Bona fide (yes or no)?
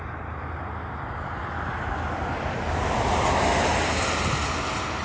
yes